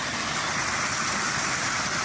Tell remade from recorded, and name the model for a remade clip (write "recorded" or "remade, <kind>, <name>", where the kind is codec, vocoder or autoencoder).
recorded